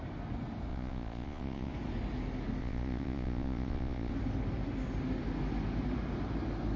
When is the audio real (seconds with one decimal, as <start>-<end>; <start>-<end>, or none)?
0.0-0.7; 1.7-2.6; 4.1-6.8